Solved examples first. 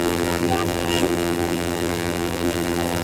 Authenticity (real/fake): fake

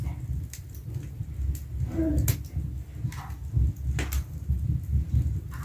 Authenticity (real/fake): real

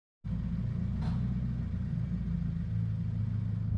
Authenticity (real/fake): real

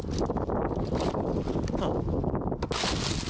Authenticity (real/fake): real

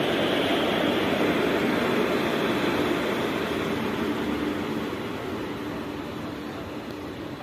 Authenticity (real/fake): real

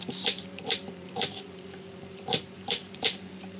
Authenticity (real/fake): fake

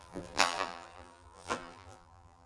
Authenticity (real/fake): fake